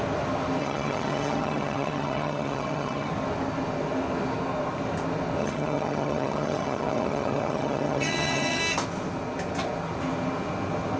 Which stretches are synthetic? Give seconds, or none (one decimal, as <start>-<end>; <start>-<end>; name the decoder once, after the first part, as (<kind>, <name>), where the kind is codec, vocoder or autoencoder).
0.6-3.1 (vocoder, HiFi-GAN); 5.4-8.6